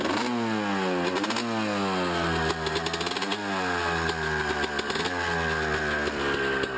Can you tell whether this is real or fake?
real